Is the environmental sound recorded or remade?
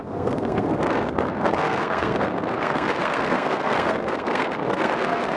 remade